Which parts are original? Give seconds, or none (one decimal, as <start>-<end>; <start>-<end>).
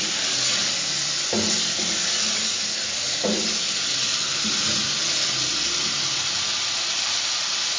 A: 0.0-7.8